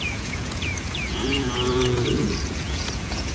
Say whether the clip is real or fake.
fake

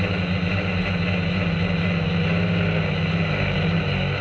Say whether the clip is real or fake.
real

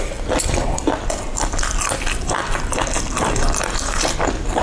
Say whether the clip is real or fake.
real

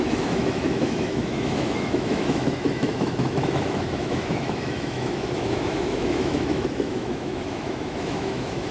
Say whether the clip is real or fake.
fake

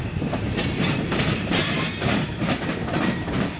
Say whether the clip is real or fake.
fake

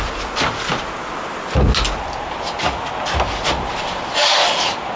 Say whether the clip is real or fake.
real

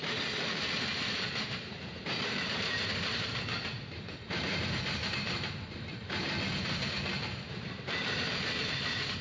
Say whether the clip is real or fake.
fake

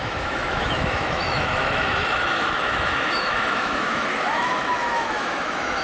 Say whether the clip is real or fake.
fake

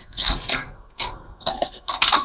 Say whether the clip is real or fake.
fake